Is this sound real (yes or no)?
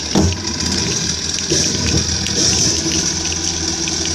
yes